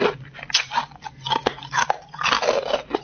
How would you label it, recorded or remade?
recorded